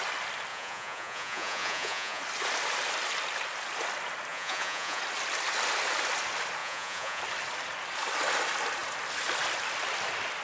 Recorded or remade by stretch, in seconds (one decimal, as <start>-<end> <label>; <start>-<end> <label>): 0.0-0.5 recorded; 0.5-2.2 remade; 2.2-4.3 recorded; 4.3-5.0 remade; 5.0-6.6 recorded; 6.6-7.2 remade; 7.2-10.4 recorded